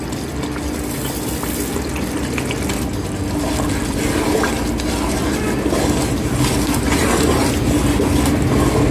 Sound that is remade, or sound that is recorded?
recorded